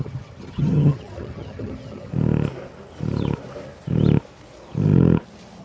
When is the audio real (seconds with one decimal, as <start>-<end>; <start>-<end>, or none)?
2.1-5.6